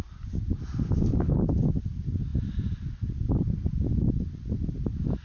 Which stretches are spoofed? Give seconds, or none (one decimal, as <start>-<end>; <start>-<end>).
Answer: none